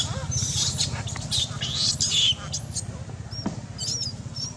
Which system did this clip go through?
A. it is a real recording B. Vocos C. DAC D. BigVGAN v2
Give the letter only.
A